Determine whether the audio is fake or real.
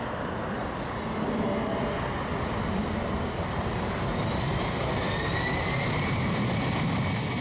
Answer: real